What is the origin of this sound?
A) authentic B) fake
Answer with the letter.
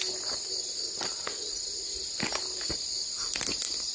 A